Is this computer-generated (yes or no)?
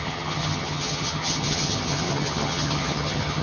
yes